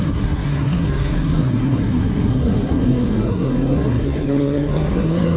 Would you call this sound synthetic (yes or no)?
yes